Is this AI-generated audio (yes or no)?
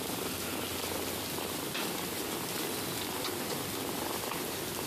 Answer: no